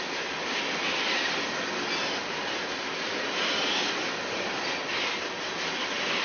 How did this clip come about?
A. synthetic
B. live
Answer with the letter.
B